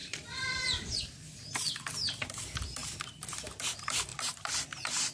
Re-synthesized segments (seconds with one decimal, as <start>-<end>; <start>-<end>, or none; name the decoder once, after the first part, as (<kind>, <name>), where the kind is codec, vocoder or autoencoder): 0.0-1.4 (vocoder, BigVGAN v2); 4.1-4.6